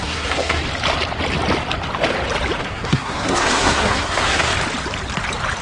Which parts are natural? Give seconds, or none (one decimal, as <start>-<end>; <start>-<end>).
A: 0.6-2.6; 4.5-5.6